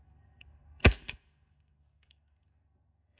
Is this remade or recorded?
remade